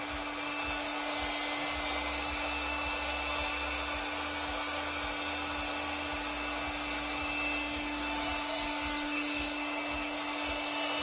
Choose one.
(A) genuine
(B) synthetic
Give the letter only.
A